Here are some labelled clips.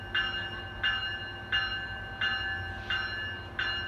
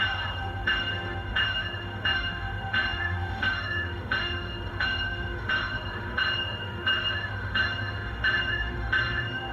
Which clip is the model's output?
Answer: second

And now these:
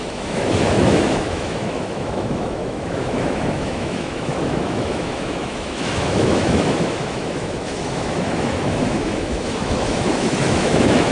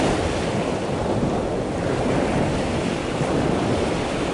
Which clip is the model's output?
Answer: first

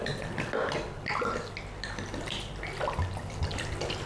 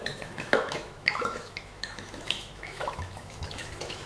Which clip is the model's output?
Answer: second